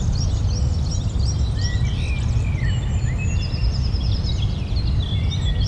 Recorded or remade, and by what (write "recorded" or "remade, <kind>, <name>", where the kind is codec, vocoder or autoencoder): recorded